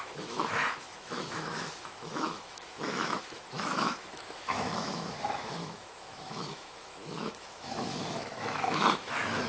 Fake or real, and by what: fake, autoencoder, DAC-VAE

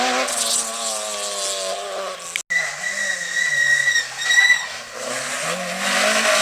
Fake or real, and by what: real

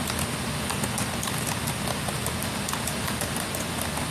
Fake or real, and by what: real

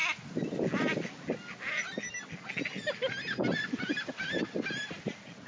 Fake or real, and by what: real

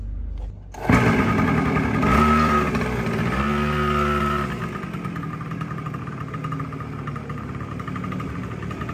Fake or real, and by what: real